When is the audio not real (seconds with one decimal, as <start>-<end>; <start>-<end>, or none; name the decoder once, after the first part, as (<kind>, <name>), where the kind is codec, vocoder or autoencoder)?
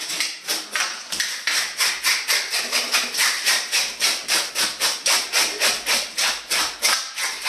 3.2-4.5 (vocoder, BigVGAN v2); 5.0-6.8